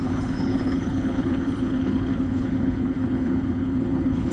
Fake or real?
fake